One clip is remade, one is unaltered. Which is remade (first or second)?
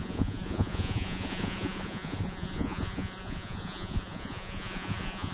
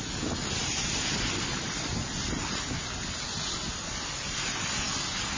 first